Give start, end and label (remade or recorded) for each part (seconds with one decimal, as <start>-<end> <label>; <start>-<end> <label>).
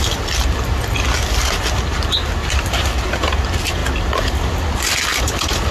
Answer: 0.0-5.7 recorded